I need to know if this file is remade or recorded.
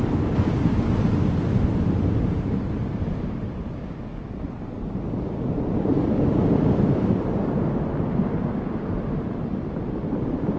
recorded